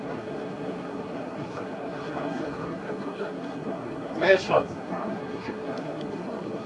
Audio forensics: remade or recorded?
remade